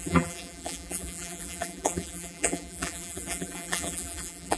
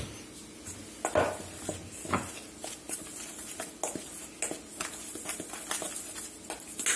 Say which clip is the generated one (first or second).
first